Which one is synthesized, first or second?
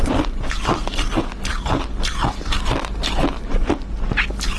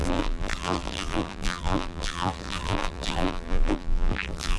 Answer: second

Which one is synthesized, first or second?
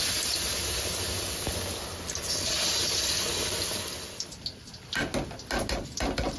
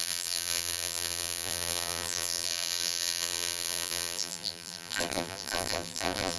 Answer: second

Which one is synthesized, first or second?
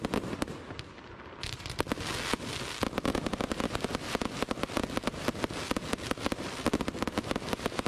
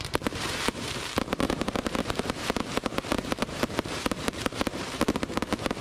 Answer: second